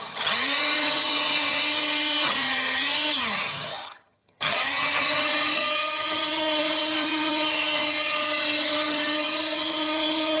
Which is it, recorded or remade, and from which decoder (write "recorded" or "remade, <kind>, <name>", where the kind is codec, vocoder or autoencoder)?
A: remade, vocoder, HiFi-GAN